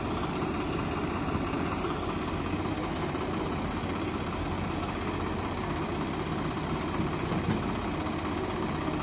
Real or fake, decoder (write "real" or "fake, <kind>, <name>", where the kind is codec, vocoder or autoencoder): real